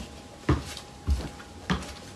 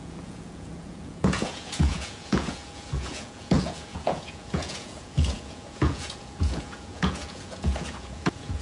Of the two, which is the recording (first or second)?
first